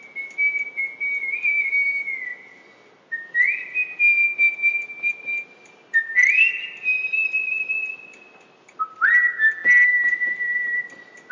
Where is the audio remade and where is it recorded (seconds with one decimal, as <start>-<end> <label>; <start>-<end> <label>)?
0.0-11.3 recorded